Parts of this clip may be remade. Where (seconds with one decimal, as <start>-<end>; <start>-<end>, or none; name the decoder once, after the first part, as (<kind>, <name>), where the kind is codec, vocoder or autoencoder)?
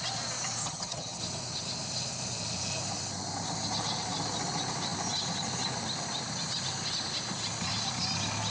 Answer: 0.6-1.2 (vocoder, HiFi-GAN)